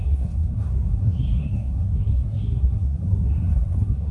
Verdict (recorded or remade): remade